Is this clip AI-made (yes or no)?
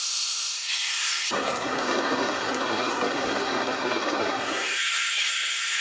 yes